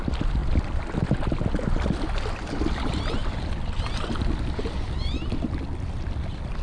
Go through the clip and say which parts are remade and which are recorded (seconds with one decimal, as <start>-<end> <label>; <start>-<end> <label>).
0.0-6.6 recorded